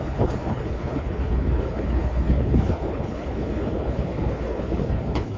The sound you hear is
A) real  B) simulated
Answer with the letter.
B